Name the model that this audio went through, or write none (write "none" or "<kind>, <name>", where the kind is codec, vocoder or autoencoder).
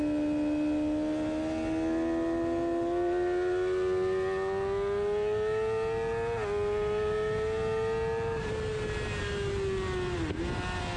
none